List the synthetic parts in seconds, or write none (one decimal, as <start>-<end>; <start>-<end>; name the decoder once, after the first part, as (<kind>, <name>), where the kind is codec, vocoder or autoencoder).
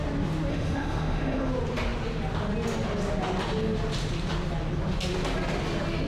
0.5-1.5 (autoencoder, DAC-VAE)